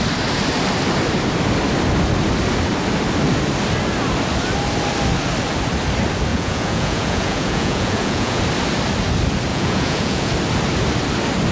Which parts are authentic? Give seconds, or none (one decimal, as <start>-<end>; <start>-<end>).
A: 0.0-6.3; 8.4-9.5; 10.3-11.5